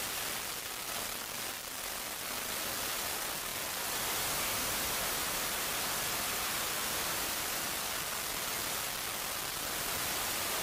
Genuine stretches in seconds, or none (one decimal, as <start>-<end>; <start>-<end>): 0.0-10.6